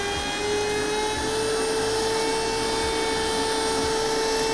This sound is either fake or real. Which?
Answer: real